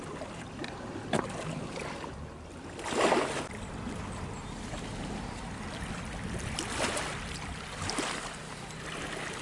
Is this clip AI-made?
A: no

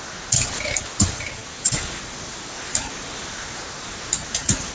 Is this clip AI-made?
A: no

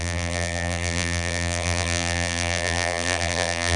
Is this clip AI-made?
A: yes